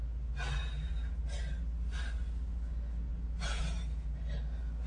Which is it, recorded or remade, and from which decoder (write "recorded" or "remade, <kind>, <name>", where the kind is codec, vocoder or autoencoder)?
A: recorded